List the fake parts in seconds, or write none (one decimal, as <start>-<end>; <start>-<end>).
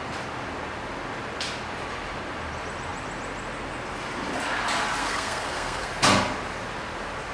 5.0-5.9